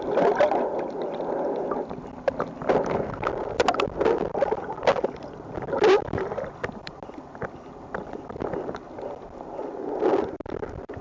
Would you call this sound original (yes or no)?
yes